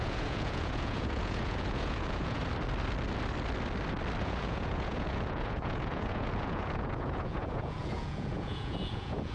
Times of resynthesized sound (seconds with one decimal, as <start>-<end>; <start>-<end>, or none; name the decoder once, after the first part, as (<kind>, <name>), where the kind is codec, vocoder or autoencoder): 0.0-2.4 (vocoder, Vocos); 4.2-9.3